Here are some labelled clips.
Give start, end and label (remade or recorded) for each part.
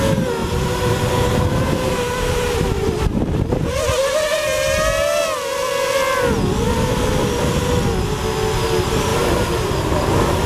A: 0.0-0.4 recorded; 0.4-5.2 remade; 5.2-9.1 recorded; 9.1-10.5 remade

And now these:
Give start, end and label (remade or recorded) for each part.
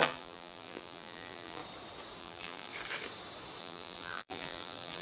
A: 0.0-1.6 remade; 1.6-2.2 recorded; 2.2-2.7 remade; 2.7-3.6 recorded; 3.6-5.0 remade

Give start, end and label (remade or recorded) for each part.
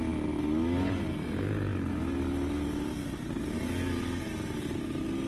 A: 0.0-5.3 recorded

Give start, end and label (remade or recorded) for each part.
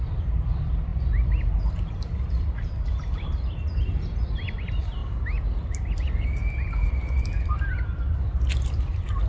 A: 0.0-5.0 remade; 5.0-6.9 recorded; 6.9-9.3 remade